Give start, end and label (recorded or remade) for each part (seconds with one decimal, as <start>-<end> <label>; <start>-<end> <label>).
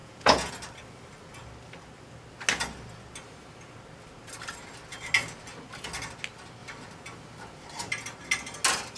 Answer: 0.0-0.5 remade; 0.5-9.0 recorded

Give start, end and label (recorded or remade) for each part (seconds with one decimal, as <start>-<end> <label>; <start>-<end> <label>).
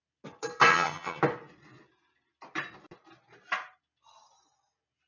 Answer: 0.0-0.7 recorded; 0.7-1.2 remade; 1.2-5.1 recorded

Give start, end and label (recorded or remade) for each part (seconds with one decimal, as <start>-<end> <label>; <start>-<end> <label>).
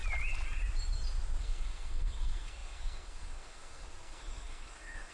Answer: 0.0-1.4 recorded; 1.4-5.1 remade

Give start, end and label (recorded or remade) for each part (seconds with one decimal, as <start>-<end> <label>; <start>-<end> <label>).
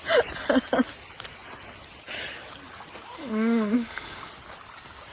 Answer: 0.0-3.2 recorded; 3.2-4.3 remade; 4.3-5.1 recorded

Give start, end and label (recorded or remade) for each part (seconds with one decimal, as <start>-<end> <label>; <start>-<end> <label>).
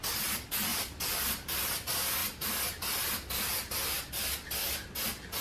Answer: 0.0-0.7 recorded; 0.7-1.6 remade; 1.6-5.4 recorded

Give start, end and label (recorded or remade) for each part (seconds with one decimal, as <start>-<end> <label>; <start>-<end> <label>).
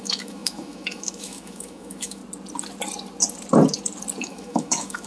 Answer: 0.0-2.2 remade; 2.2-4.2 recorded; 4.2-5.1 remade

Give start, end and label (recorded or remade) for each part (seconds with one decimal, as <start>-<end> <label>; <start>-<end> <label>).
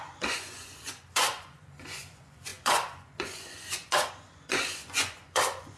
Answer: 0.0-5.8 remade